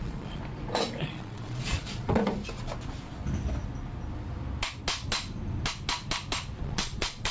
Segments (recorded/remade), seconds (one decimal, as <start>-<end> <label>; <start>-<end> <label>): 0.0-0.4 remade; 0.4-1.0 recorded; 1.0-2.2 remade; 2.2-6.6 recorded; 6.6-7.3 remade